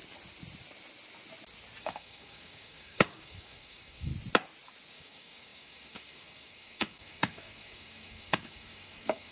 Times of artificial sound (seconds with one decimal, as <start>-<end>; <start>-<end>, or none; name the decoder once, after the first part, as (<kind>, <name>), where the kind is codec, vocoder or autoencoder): 1.8-4.1 (codec, DAC); 4.9-9.3